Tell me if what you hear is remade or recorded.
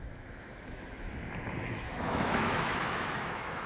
remade